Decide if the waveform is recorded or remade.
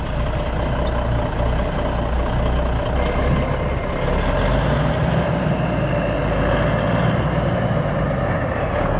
recorded